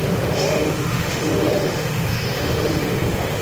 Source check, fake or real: fake